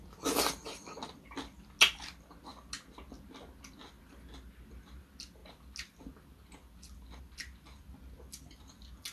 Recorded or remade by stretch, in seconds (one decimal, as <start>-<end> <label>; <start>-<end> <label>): 0.0-9.1 recorded